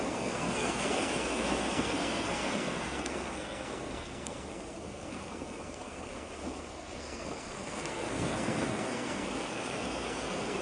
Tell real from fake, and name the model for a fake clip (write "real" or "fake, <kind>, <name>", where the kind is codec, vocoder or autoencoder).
fake, codec, SNAC